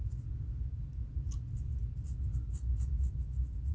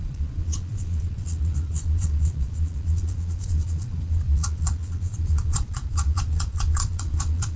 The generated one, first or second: second